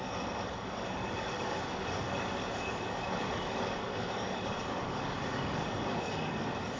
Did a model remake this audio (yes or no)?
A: yes